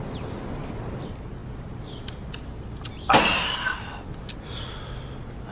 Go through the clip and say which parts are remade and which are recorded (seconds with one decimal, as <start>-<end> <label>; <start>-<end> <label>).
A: 0.0-5.5 recorded